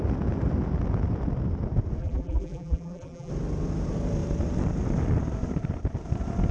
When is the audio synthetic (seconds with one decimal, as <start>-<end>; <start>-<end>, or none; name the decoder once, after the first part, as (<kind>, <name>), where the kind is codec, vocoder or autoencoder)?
2.0-3.3 (vocoder, BigVGAN v2)

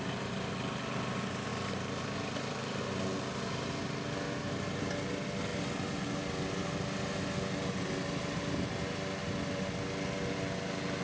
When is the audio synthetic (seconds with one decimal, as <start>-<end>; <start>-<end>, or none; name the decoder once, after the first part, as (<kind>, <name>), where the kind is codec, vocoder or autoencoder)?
1.5-2.8 (vocoder, BigVGAN v2)

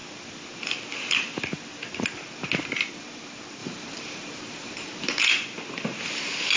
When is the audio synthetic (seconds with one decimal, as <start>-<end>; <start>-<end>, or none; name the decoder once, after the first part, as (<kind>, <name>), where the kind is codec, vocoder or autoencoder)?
3.6-5.2 (vocoder, BigVGAN v2)

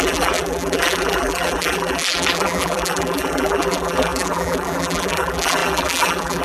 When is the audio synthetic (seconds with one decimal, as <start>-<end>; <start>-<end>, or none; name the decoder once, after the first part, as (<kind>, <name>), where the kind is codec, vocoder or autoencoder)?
0.0-6.4 (vocoder, BigVGAN v2)

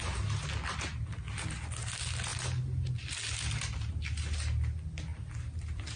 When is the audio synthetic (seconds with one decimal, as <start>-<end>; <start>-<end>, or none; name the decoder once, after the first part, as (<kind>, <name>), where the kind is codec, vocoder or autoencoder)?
5.1-6.0 (vocoder, BigVGAN v2)

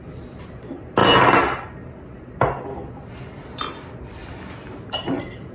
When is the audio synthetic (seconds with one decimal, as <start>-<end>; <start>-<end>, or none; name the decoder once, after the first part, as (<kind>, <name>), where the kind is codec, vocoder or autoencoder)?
none

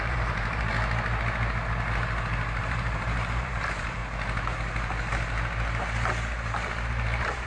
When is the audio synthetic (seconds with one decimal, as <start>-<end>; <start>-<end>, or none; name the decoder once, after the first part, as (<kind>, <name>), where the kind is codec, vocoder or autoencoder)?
0.0-0.7 (vocoder, BigVGAN v2); 2.6-4.0; 6.5-7.5